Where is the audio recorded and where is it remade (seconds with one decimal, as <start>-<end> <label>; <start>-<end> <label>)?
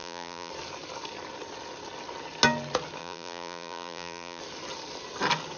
0.0-0.5 remade; 0.5-3.0 recorded; 3.0-4.4 remade; 4.4-5.6 recorded